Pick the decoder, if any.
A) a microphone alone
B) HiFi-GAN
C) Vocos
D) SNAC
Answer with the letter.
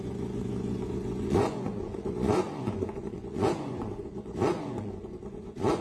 C